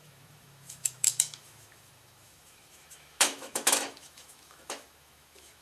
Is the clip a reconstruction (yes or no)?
yes